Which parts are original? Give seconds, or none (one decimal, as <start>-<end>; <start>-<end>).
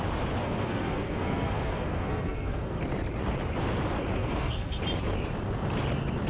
0.0-0.4; 2.8-4.2; 4.8-6.3